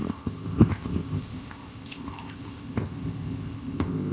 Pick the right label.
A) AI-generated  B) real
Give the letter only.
A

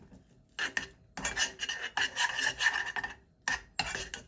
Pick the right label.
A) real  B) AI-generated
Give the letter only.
A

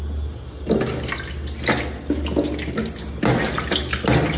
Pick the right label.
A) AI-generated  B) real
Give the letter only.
B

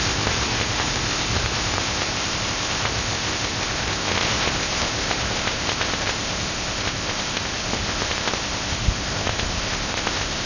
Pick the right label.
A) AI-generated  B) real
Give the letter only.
A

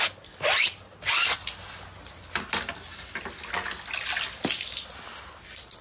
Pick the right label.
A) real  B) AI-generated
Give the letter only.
A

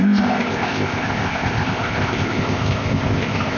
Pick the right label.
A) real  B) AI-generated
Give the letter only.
B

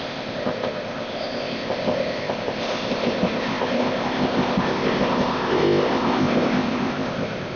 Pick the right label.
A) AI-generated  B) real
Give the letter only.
A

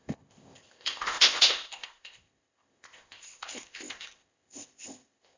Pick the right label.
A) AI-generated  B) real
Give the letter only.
A